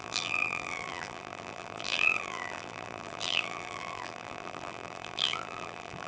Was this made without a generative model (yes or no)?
no